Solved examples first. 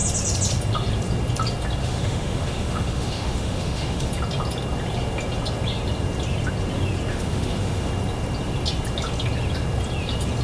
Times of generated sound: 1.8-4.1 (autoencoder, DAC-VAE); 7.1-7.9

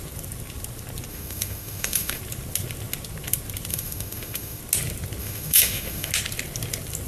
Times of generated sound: 1.1-2.2 (autoencoder, DAC-VAE); 3.7-4.6; 5.2-6.1

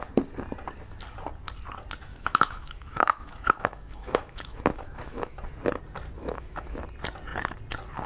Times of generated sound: 2.1-5.4 (autoencoder, DAC-VAE); 6.2-6.8

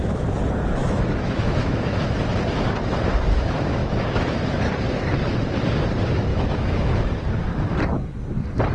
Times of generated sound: 0.8-2.0 (autoencoder, DAC-VAE); 3.8-4.6; 6.3-7.0

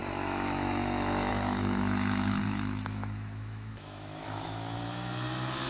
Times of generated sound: 0.0-5.7 (autoencoder, DAC-VAE)

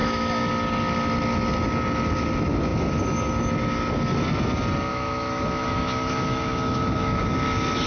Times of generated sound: 0.0-0.5 (autoencoder, DAC-VAE); 4.9-7.2